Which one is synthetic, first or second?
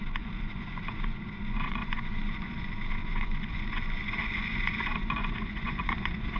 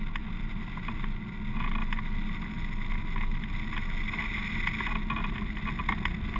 first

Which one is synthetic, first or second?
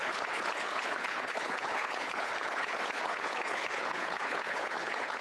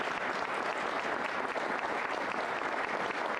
first